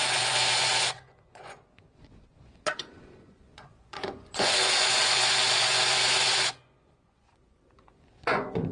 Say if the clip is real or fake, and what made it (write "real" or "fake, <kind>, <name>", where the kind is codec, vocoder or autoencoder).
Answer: fake, vocoder, Vocos